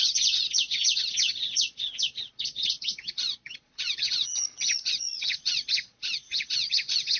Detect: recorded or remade remade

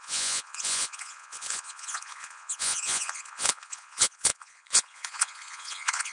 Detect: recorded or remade remade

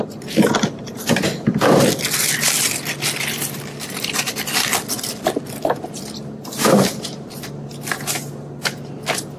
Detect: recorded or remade recorded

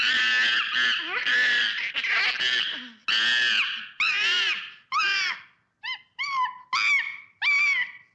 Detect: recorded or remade recorded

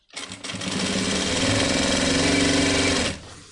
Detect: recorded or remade recorded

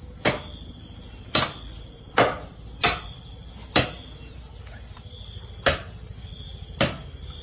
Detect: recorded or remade recorded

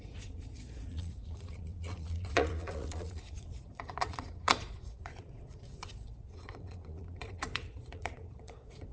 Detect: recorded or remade remade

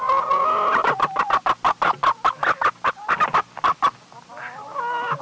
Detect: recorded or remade recorded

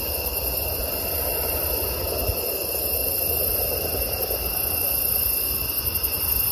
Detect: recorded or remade recorded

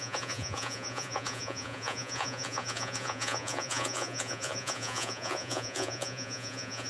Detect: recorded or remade remade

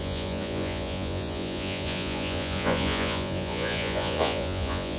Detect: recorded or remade remade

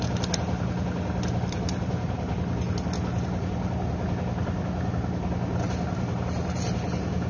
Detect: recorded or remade recorded